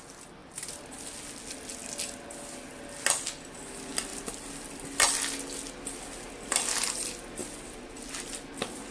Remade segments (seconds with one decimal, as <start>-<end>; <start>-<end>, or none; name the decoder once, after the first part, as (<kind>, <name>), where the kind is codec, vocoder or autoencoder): 0.4-0.9 (vocoder, BigVGAN v2)

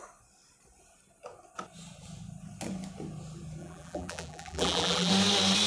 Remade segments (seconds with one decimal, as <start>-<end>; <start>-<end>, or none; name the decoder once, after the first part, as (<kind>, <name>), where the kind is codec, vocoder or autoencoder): 3.6-5.1 (vocoder, BigVGAN v2)

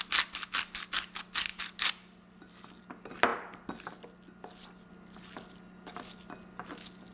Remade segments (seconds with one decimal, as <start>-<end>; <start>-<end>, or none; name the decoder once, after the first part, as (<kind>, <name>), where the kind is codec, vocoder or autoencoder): none

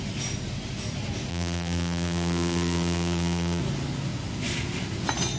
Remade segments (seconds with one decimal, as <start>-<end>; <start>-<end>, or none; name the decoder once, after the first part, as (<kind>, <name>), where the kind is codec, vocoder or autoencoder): 1.3-3.6 (vocoder, BigVGAN v2)

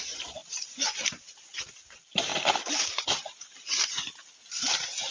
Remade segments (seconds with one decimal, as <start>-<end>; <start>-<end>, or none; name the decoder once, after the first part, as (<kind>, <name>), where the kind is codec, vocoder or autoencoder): 0.0-5.1 (vocoder, BigVGAN v2)